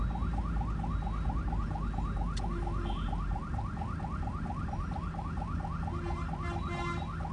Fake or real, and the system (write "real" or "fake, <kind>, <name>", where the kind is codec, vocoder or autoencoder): real